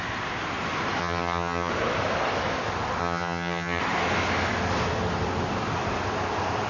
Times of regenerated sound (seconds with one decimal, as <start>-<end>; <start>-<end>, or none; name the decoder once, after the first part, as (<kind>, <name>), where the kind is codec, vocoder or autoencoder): 1.0-1.7 (vocoder, HiFi-GAN); 3.0-3.8

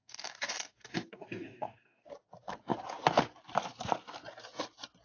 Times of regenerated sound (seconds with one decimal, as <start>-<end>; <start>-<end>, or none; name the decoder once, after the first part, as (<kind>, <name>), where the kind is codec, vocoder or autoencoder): 0.0-2.1 (codec, DAC)

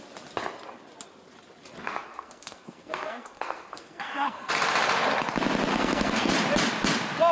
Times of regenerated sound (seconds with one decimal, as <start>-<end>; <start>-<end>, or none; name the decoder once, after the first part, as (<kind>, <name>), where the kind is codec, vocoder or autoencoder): 1.8-4.5 (codec, SNAC); 5.7-6.3

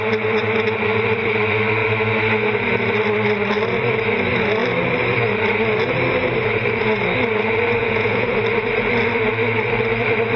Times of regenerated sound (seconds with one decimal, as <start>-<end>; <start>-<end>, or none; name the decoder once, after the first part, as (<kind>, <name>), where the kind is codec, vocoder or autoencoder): 7.8-8.3 (vocoder, Vocos)